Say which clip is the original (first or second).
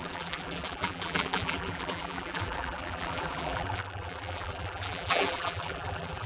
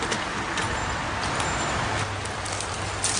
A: second